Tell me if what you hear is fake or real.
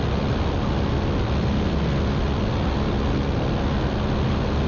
real